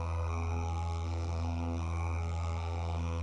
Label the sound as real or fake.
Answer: fake